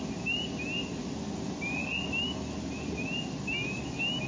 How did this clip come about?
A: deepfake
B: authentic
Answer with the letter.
B